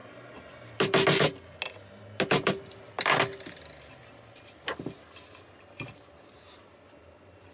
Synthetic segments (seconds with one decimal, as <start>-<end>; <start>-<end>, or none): none